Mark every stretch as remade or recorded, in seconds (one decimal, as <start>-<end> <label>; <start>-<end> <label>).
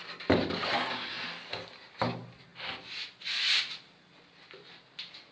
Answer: 0.0-5.3 recorded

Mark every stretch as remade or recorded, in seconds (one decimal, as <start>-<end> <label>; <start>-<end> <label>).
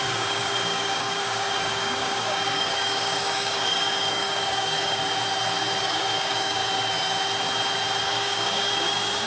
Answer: 0.0-5.0 remade; 5.0-5.8 recorded; 5.8-6.6 remade; 6.6-8.0 recorded; 8.0-9.3 remade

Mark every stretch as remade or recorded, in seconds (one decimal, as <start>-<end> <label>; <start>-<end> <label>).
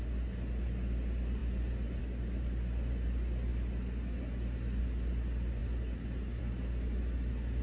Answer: 0.0-7.6 recorded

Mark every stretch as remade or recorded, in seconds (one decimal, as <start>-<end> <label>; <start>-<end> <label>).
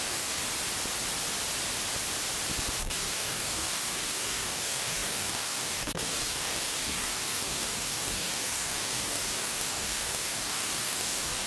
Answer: 0.0-0.4 remade; 0.4-2.8 recorded; 2.8-11.5 remade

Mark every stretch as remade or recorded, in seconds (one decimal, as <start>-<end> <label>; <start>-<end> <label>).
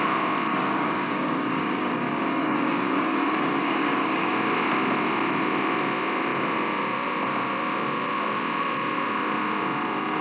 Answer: 0.0-0.5 recorded; 0.5-4.3 remade; 4.3-10.2 recorded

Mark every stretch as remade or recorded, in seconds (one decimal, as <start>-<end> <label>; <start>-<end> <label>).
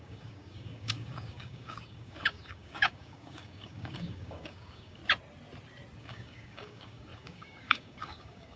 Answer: 0.0-5.0 remade; 5.0-6.0 recorded; 6.0-8.6 remade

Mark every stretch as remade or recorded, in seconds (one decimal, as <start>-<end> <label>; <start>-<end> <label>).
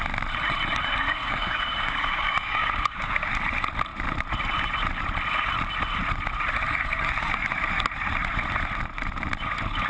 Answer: 0.0-1.2 recorded; 1.2-3.3 remade; 3.3-9.9 recorded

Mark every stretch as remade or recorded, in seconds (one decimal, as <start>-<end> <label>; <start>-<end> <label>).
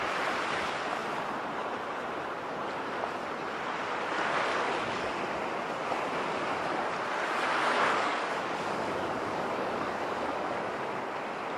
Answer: 0.0-4.5 recorded; 4.5-5.1 remade; 5.1-7.6 recorded; 7.6-10.5 remade; 10.5-11.6 recorded